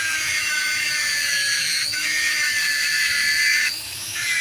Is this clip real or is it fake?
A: fake